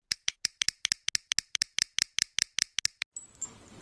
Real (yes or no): yes